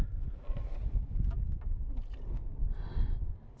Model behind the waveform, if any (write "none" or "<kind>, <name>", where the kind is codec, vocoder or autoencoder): none